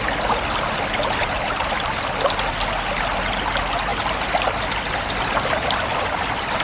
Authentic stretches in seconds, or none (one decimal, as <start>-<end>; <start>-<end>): 0.0-6.6